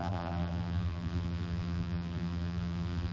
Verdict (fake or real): fake